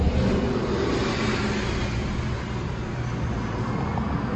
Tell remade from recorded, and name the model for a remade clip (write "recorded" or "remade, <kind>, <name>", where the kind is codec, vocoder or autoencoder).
recorded